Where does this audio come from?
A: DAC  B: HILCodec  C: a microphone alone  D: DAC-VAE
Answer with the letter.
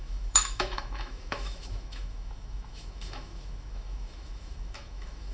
D